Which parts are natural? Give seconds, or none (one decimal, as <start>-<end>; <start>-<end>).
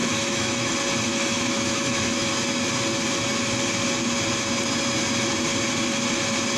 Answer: 0.7-1.1; 2.3-6.6